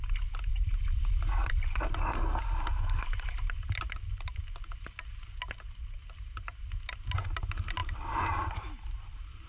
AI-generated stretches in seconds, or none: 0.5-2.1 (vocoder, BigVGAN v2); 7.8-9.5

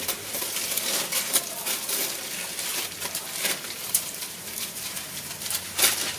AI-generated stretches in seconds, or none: 2.7-5.7 (vocoder, BigVGAN v2)

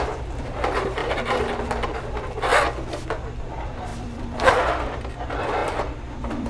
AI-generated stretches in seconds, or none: 0.0-2.5 (vocoder, BigVGAN v2); 3.3-6.5

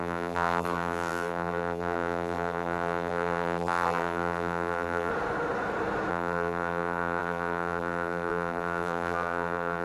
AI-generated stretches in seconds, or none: 0.0-5.1 (vocoder, BigVGAN v2); 6.1-9.8

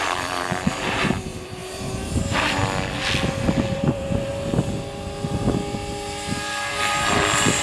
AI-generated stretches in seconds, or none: 0.0-2.6 (vocoder, BigVGAN v2); 3.7-4.3; 6.8-7.6

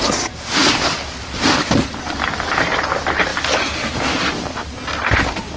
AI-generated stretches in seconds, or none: none

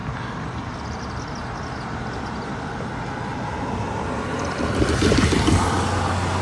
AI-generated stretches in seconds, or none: 4.3-5.5 (vocoder, BigVGAN v2)

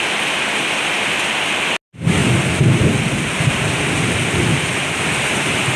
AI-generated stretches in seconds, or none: 2.2-3.7 (vocoder, BigVGAN v2)